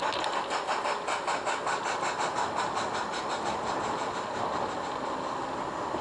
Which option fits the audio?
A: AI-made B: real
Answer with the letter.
B